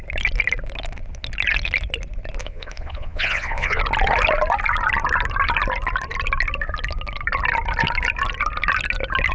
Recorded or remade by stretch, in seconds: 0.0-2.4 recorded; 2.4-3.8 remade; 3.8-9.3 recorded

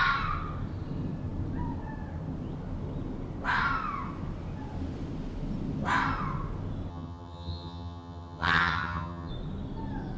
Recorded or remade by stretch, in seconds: 0.0-6.9 recorded; 6.9-9.3 remade; 9.3-10.2 recorded

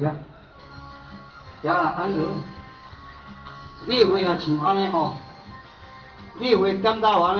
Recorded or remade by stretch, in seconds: 0.0-6.1 remade; 6.1-7.4 recorded

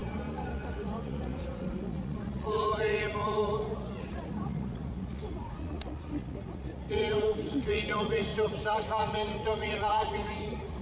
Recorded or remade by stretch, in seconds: 0.0-10.8 remade